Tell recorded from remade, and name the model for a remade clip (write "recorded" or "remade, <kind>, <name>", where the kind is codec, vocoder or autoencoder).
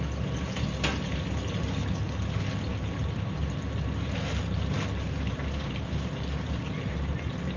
recorded